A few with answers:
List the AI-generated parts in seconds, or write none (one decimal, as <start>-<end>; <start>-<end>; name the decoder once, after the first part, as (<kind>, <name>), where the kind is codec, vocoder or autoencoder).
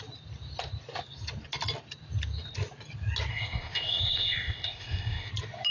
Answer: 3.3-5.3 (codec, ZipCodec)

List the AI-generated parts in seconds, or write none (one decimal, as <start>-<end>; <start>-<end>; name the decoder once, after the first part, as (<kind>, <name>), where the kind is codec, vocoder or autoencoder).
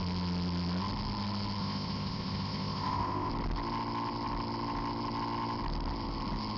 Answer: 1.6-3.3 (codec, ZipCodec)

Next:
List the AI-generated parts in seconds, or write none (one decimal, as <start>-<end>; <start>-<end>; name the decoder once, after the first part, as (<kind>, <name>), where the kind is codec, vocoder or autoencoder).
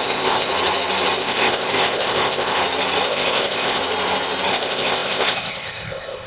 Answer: 0.0-0.5 (codec, ZipCodec); 1.2-2.6; 3.1-3.8; 4.5-6.3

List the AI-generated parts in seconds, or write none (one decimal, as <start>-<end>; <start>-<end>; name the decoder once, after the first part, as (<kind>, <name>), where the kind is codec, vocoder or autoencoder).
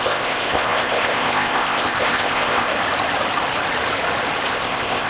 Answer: 0.0-2.7 (codec, ZipCodec); 4.5-5.1